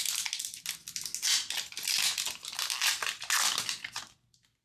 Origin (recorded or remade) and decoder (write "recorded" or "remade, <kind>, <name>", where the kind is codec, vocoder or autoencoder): recorded